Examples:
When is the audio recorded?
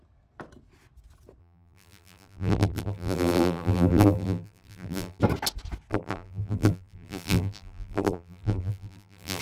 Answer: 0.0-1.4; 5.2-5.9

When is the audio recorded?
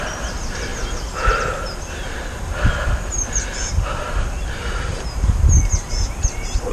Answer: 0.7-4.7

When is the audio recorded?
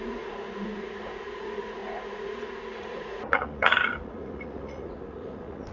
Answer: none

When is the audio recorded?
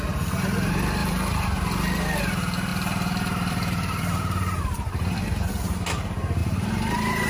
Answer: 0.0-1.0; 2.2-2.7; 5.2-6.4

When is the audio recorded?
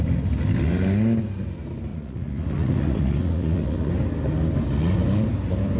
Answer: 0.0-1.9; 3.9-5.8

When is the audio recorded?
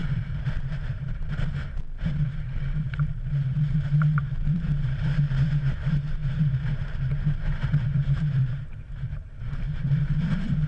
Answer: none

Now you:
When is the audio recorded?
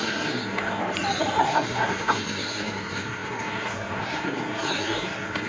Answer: 0.8-1.4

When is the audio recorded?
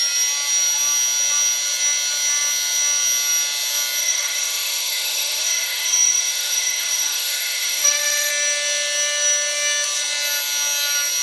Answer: 0.0-4.0; 8.3-11.2